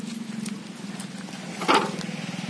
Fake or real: real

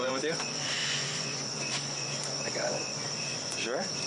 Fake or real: fake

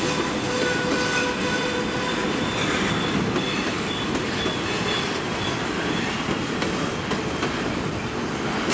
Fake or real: real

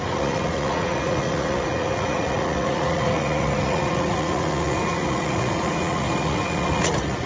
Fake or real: fake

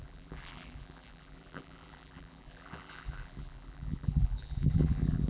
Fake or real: fake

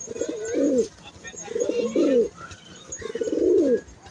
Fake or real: real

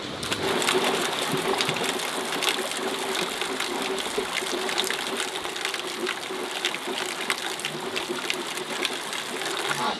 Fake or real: real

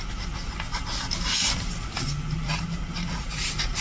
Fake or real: real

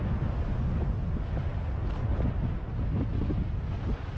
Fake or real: real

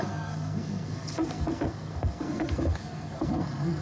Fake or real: fake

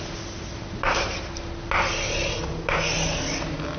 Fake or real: real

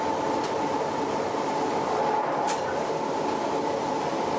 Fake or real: real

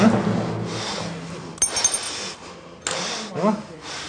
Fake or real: real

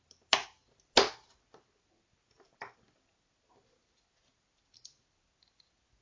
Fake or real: real